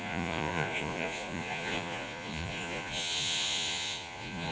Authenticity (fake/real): fake